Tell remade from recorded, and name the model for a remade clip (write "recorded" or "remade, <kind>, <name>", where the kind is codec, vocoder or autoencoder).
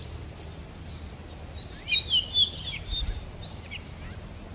recorded